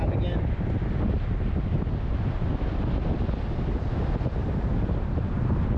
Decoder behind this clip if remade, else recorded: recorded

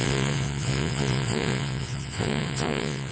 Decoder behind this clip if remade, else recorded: remade, vocoder, WaveNeXt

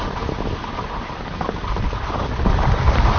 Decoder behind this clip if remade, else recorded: recorded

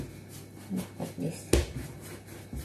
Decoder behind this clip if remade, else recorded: recorded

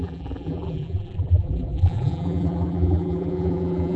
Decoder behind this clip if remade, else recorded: remade, vocoder, BigVGAN v2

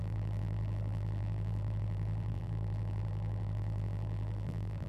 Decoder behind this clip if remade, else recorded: remade, vocoder, BigVGAN v2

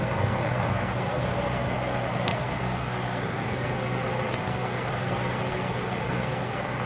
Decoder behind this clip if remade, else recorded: remade, codec, SNAC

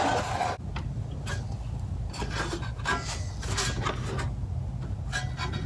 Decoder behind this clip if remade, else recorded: recorded